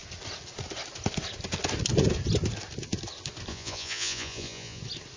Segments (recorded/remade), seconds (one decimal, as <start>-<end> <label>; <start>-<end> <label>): 0.0-3.5 recorded; 3.5-4.8 remade; 4.8-5.2 recorded